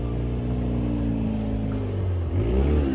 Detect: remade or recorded recorded